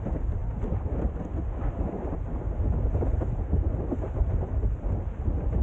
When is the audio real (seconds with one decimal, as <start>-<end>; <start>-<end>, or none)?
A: 0.0-5.6